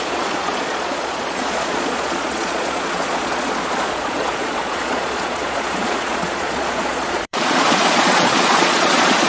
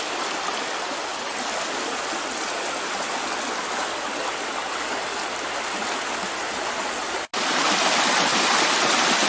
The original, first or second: second